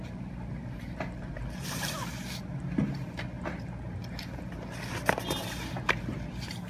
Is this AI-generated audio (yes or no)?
no